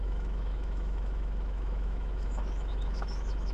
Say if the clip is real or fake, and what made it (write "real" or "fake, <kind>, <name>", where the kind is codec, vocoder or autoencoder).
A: fake, autoencoder, DAC-VAE